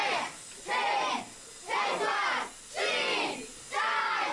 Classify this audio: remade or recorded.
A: recorded